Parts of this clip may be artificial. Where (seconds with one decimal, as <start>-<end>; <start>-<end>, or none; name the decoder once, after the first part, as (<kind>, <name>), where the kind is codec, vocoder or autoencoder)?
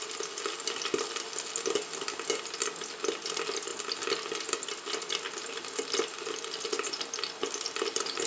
none